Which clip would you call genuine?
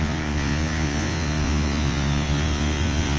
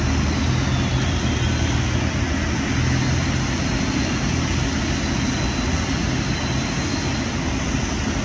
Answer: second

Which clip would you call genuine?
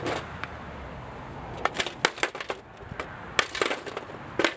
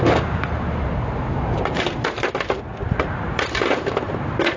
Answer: first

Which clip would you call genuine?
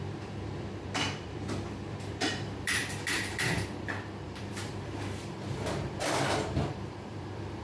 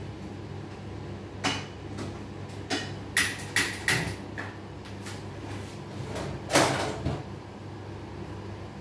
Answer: second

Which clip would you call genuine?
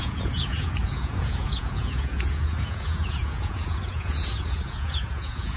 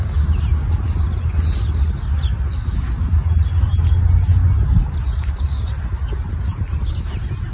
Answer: second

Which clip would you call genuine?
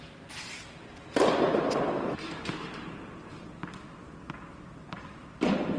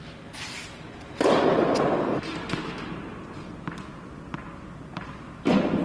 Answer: second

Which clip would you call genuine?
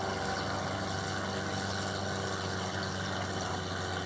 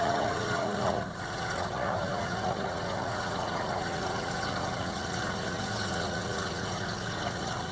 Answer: first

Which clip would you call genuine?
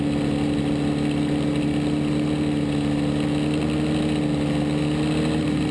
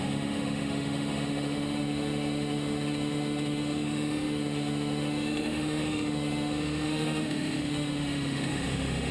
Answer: first